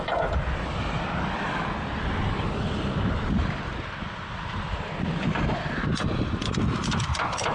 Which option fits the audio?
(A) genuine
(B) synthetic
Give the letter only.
B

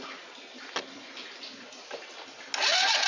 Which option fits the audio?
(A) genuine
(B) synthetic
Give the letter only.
A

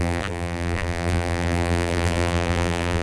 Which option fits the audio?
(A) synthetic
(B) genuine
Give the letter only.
A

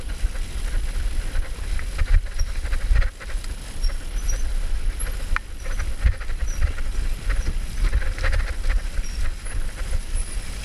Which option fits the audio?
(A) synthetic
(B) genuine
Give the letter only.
B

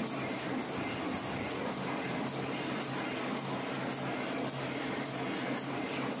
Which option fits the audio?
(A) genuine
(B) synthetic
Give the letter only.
A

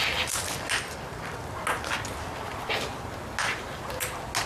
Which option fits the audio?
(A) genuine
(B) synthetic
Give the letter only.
A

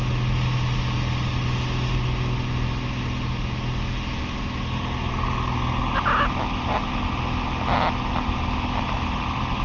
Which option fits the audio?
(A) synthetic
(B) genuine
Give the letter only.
B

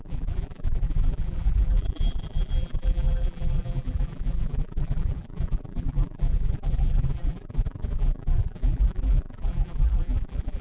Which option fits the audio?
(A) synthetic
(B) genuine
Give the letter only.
A